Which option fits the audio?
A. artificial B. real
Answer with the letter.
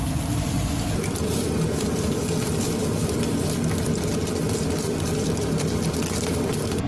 B